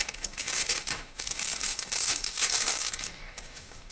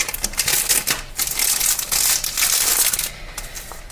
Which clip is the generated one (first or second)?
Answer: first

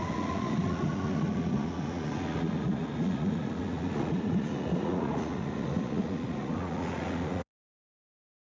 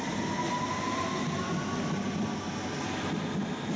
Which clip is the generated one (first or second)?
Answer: first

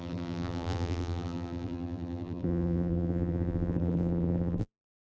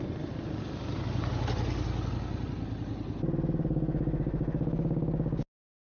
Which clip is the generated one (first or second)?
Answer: first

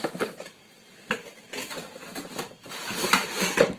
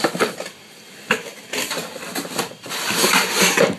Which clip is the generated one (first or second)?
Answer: first